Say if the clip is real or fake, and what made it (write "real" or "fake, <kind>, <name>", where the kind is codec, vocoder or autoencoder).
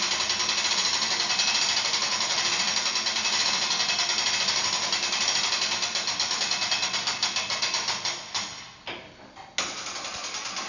real